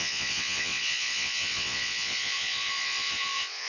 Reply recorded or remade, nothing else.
remade